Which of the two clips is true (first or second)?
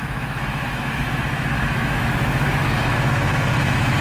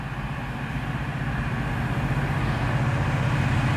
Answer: second